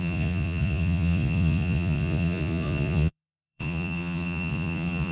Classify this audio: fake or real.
fake